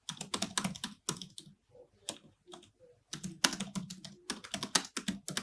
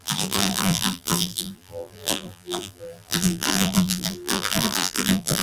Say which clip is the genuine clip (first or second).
first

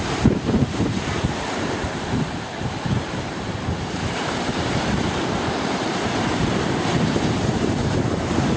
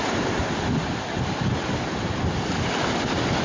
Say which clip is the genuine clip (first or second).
second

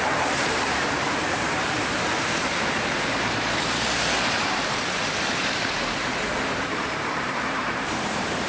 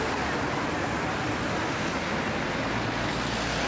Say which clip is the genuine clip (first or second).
second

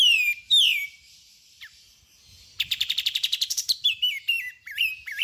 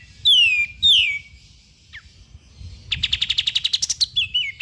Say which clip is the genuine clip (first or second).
second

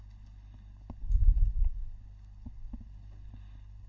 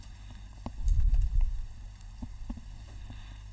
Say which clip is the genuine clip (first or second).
first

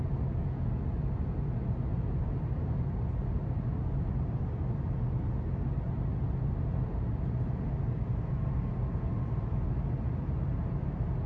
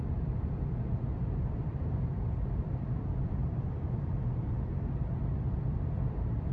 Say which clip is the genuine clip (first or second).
first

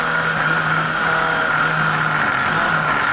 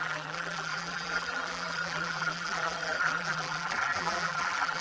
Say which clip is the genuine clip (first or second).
first